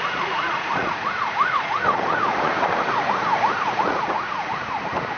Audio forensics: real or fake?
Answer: fake